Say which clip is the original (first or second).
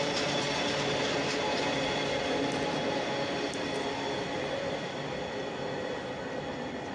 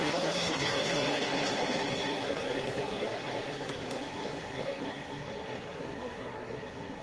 first